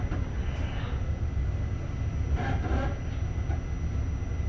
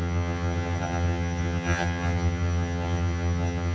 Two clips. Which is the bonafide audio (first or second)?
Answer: first